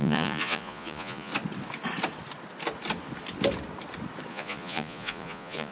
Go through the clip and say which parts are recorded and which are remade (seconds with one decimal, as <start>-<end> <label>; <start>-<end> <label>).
0.0-1.3 remade; 1.3-4.3 recorded; 4.3-5.7 remade